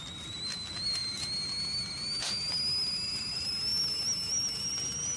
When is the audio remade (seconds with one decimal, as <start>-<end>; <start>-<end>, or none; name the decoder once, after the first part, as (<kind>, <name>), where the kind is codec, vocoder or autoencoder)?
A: none